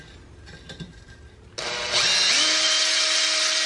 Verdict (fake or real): real